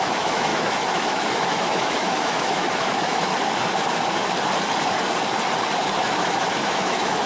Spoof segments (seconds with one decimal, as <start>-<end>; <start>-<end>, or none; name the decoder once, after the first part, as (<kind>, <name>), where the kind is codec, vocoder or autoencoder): 0.0-3.3 (autoencoder, DAC-VAE); 6.0-7.3